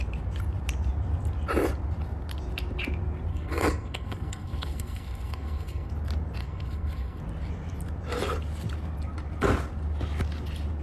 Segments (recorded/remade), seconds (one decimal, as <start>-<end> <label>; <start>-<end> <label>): 0.0-3.3 recorded; 3.3-5.9 remade; 5.9-6.4 recorded; 6.4-7.2 remade; 7.2-10.8 recorded